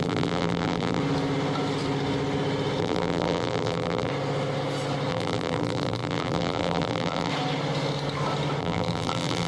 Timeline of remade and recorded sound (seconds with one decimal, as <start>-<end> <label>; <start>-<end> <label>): 0.0-1.0 remade; 1.0-2.8 recorded; 2.8-4.1 remade; 4.1-5.1 recorded; 5.1-7.3 remade; 7.3-8.6 recorded; 8.6-9.5 remade